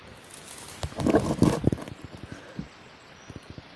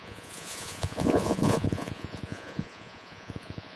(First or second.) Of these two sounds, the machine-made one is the second